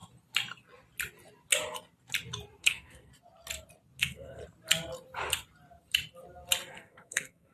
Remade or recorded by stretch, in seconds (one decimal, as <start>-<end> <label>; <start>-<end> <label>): 0.0-2.6 recorded; 2.6-3.1 remade; 3.1-4.0 recorded; 4.0-4.4 remade; 4.4-6.7 recorded; 6.7-7.5 remade